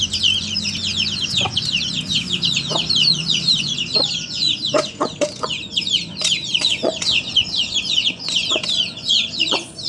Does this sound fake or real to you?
fake